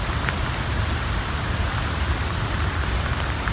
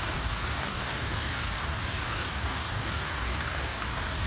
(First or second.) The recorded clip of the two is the first